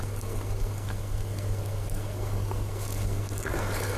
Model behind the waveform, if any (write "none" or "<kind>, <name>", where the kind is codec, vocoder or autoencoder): codec, SNAC